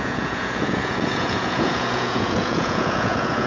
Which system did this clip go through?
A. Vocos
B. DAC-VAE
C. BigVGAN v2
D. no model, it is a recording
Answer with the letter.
A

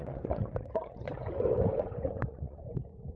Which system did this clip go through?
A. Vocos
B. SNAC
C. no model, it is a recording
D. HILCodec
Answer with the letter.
A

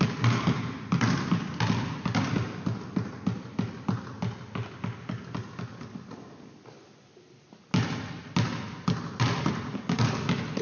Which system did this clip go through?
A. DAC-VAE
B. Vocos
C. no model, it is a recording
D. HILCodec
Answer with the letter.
C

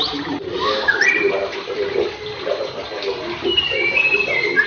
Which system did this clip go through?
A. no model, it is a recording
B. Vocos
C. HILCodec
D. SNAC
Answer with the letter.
A